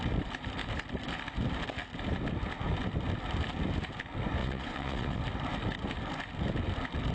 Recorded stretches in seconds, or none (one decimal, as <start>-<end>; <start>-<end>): 0.0-4.4; 5.2-7.1